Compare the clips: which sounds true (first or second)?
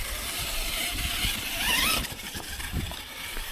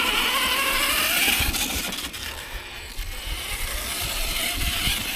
second